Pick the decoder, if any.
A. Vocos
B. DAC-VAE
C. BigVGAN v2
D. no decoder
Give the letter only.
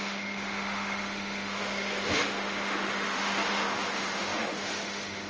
B